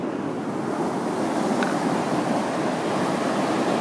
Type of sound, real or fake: real